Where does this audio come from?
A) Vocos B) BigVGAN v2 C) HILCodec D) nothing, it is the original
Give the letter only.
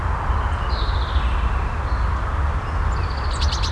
D